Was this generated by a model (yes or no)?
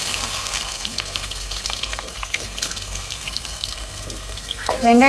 yes